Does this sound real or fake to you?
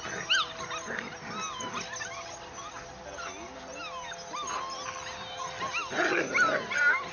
real